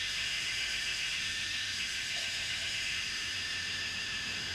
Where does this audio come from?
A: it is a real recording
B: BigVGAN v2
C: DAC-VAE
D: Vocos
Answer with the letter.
C